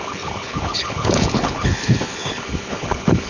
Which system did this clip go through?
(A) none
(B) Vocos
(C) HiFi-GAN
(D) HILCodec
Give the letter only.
D